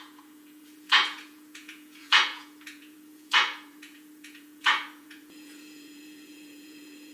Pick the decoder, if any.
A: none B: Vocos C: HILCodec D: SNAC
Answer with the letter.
B